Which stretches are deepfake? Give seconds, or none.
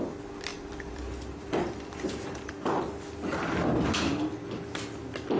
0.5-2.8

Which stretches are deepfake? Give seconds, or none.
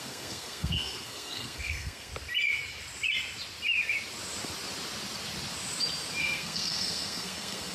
0.0-2.1; 6.2-7.7